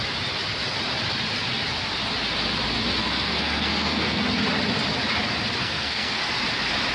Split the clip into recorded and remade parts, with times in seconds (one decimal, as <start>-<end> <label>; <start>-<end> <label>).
0.0-3.0 recorded; 3.0-4.2 remade; 4.2-5.6 recorded; 5.6-6.2 remade; 6.2-6.9 recorded